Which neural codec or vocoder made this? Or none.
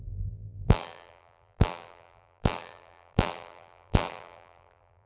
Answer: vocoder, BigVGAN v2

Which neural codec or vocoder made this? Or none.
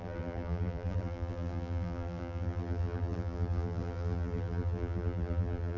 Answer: vocoder, BigVGAN v2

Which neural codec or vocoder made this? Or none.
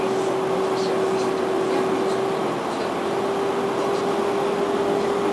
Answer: none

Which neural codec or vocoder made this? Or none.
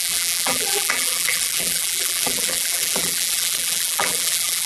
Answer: vocoder, BigVGAN v2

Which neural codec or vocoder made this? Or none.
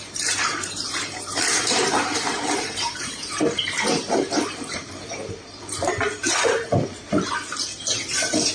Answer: vocoder, BigVGAN v2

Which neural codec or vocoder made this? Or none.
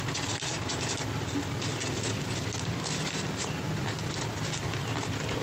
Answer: none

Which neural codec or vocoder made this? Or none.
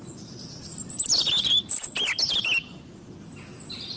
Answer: none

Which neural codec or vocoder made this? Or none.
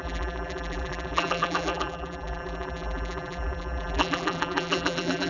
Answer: vocoder, BigVGAN v2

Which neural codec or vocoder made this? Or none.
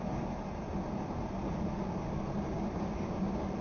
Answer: none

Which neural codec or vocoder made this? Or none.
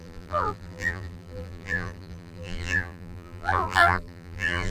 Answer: vocoder, BigVGAN v2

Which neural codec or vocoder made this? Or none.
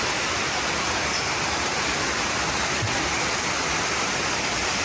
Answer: none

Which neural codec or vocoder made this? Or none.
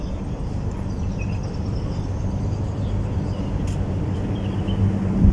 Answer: vocoder, BigVGAN v2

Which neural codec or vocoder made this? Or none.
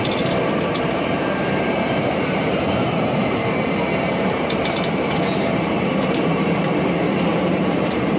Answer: vocoder, BigVGAN v2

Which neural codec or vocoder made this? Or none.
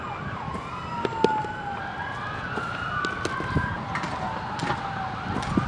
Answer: none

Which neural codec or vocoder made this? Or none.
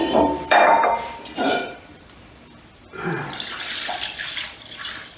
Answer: vocoder, BigVGAN v2